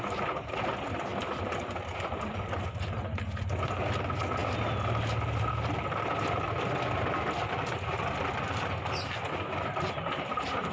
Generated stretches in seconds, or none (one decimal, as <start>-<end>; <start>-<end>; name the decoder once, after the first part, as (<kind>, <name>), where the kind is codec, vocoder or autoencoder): none